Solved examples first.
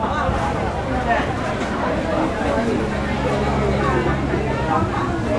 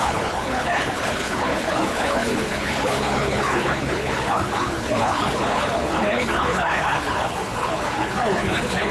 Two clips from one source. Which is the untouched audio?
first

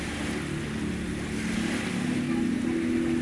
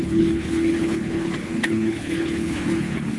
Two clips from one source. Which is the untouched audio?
first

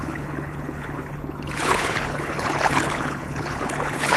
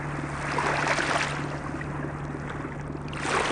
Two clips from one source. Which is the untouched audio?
second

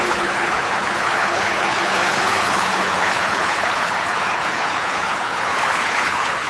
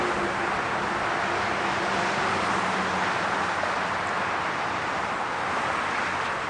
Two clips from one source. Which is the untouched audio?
second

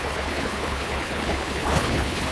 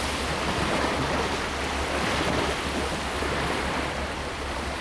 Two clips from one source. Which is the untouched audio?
second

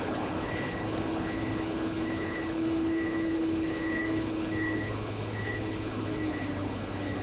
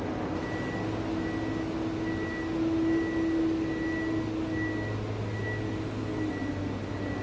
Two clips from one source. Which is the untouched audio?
second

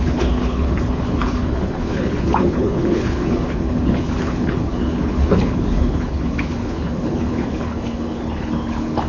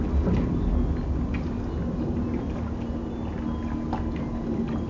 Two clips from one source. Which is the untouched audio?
second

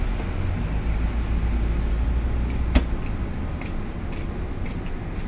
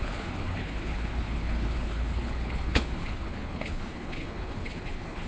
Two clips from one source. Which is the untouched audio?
first